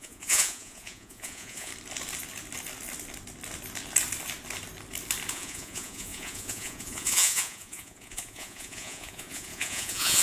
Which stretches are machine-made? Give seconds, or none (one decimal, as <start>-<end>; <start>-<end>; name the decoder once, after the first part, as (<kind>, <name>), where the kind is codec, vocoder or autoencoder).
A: 0.0-1.7 (vocoder, Vocos); 5.3-10.2